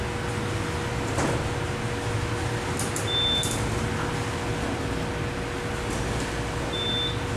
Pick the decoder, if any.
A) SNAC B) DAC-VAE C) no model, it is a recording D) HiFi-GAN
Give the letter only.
C